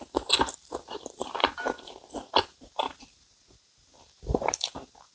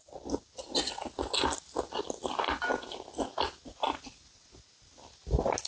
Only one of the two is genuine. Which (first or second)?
second